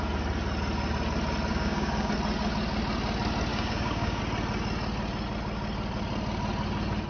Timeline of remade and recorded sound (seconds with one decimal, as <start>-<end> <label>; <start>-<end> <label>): 0.0-1.5 recorded; 1.5-2.1 remade; 2.1-3.5 recorded; 3.5-4.2 remade; 4.2-7.1 recorded